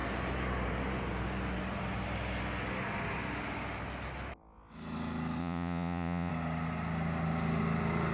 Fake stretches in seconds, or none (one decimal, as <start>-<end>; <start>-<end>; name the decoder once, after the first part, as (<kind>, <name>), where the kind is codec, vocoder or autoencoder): 5.4-6.3 (vocoder, Vocos)